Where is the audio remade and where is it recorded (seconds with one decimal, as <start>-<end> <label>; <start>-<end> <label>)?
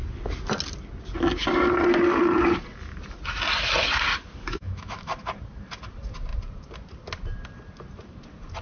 0.0-4.5 recorded; 4.5-5.1 remade; 5.1-8.6 recorded